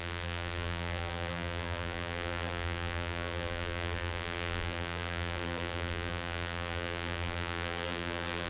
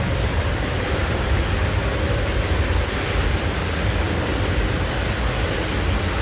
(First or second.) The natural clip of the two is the second